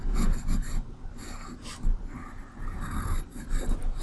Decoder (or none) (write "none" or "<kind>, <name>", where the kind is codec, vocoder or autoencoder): none